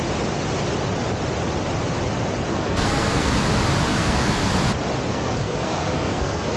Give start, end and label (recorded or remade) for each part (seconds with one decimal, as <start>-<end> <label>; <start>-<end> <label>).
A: 0.0-2.5 recorded; 2.5-3.3 remade; 3.3-3.9 recorded; 3.9-4.5 remade; 4.5-5.1 recorded; 5.1-6.6 remade